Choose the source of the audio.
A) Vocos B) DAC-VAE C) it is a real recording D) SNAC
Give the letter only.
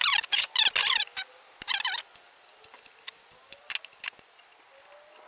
C